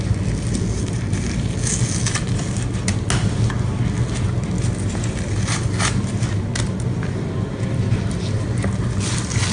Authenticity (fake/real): real